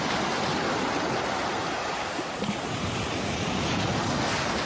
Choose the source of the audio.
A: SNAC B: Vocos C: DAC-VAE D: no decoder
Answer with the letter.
D